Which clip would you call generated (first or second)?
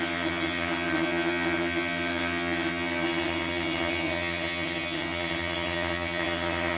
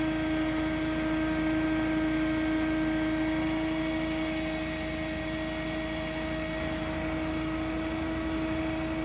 first